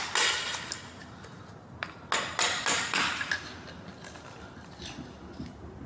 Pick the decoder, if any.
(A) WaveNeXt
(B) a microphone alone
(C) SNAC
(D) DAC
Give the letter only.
B